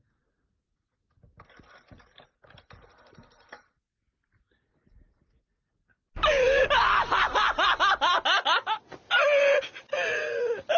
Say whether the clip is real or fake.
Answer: real